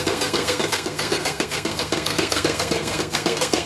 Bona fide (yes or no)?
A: no